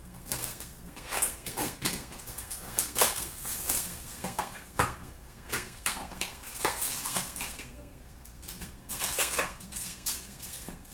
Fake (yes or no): yes